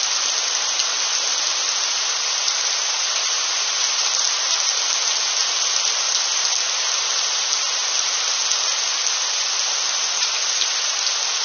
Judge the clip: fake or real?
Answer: real